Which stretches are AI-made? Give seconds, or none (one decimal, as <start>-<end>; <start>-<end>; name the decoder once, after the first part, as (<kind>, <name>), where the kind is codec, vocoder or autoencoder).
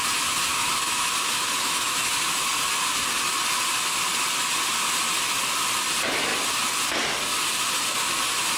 0.5-2.1 (autoencoder, DAC-VAE)